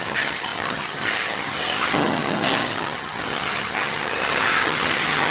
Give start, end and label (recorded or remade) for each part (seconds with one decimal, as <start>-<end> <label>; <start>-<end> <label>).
0.0-5.3 remade